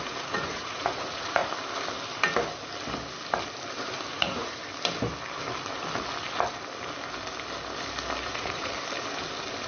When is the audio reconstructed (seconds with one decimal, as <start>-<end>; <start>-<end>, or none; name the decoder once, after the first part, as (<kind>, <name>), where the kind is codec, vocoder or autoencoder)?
0.0-1.4 (vocoder, Vocos); 4.1-4.6; 8.2-8.7

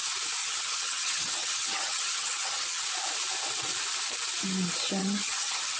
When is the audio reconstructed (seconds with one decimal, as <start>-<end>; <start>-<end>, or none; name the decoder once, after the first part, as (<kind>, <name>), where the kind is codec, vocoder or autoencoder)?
0.4-2.8 (vocoder, HiFi-GAN); 5.0-5.8

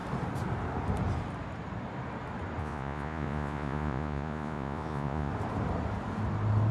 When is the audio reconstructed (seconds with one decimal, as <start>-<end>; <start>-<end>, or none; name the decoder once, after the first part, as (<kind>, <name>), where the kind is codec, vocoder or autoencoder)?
2.6-5.3 (vocoder, Vocos)

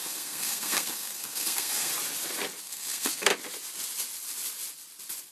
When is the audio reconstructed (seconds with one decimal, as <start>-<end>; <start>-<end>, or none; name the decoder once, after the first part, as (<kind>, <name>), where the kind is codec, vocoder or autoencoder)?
0.0-1.9 (codec, SNAC); 2.6-3.3

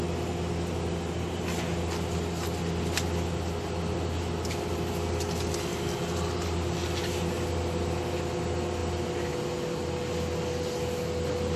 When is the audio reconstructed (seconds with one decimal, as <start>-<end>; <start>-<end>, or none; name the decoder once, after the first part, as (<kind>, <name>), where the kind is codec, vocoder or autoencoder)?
none

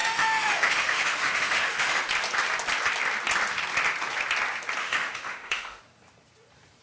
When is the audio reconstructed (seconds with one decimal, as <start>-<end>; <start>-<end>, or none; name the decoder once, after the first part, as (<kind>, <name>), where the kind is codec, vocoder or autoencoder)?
0.0-2.0 (autoencoder, DAC-VAE); 4.8-5.8